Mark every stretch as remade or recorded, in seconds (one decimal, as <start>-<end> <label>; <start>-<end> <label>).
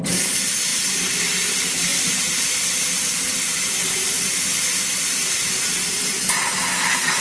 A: 0.0-0.7 recorded; 0.7-1.2 remade; 1.2-1.9 recorded; 1.9-6.2 remade; 6.2-7.2 recorded